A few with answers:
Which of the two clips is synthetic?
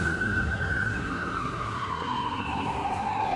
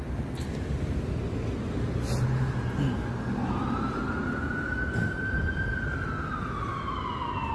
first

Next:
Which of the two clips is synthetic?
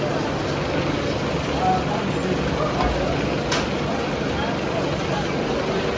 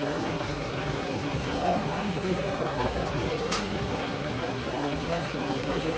second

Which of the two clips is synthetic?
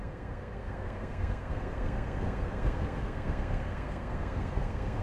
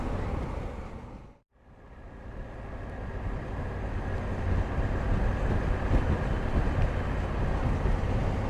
first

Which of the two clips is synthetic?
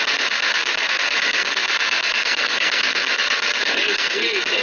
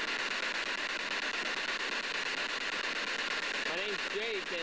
first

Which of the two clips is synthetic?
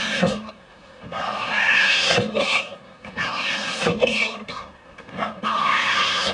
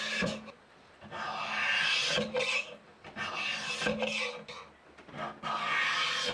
first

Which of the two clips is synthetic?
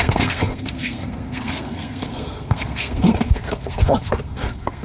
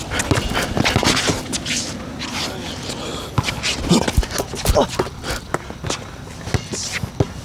first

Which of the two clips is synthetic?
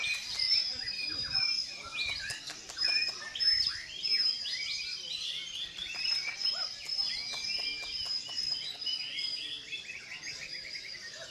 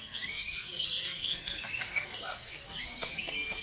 second